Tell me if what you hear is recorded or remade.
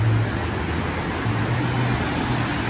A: recorded